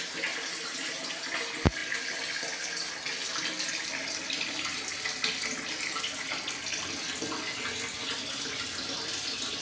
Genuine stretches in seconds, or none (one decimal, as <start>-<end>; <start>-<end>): 0.0-9.6